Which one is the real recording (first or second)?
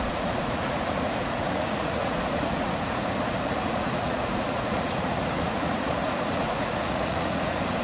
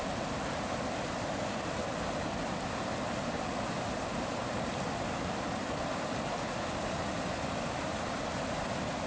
second